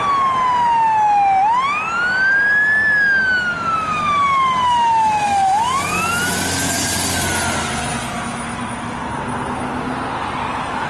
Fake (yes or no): no